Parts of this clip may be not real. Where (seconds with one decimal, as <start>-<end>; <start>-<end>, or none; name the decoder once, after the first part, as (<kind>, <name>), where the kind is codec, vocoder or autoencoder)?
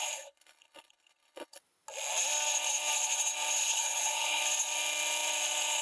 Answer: 0.0-1.6 (codec, HILCodec); 3.6-4.4